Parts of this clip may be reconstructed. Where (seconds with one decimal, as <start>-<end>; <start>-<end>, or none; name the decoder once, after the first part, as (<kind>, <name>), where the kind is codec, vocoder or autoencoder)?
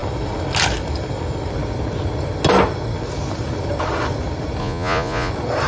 4.6-5.3 (vocoder, Vocos)